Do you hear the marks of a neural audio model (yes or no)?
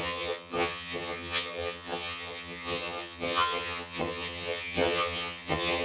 yes